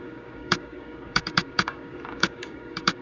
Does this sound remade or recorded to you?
remade